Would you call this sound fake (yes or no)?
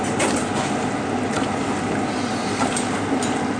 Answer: no